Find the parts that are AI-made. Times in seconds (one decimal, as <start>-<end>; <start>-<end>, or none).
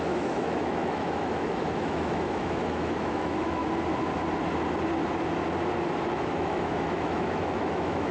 0.0-3.6; 6.1-8.1